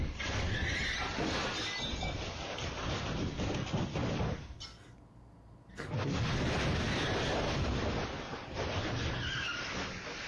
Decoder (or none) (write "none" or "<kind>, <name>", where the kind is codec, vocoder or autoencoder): none